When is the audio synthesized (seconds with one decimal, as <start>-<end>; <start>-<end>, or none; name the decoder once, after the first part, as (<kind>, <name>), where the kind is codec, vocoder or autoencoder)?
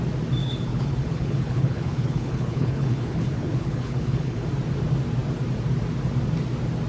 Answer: 0.4-4.5 (codec, HILCodec)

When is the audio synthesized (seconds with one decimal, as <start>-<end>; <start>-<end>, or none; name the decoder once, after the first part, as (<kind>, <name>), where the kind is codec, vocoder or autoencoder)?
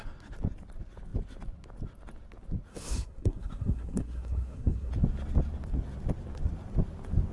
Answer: 2.7-4.9 (codec, SNAC)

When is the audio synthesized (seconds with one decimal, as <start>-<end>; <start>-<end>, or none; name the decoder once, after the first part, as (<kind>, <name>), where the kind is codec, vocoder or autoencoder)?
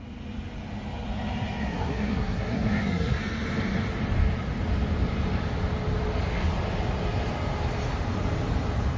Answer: 1.6-3.2 (codec, SNAC)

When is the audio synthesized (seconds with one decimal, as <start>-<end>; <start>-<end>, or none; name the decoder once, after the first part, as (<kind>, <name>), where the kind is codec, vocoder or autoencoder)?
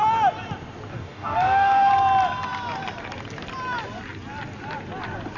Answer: 0.9-1.9 (codec, DAC)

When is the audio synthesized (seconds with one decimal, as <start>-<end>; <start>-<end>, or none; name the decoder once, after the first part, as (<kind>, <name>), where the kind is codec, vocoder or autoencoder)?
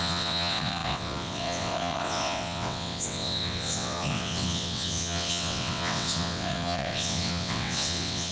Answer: 0.0-8.3 (vocoder, WaveNeXt)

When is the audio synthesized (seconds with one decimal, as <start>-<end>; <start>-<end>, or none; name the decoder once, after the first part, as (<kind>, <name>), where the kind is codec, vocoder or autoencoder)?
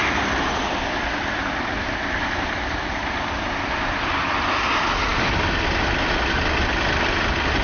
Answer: none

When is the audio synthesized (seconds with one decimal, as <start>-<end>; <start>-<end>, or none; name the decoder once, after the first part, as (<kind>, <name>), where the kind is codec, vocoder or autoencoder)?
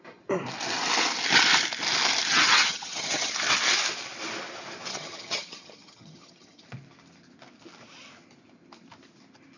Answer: 2.3-3.3 (vocoder, HiFi-GAN); 4.9-6.6